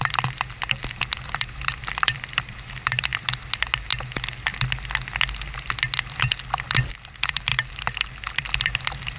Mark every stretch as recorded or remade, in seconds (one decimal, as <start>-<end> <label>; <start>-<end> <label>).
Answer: 0.0-3.1 remade; 3.1-6.0 recorded; 6.0-9.2 remade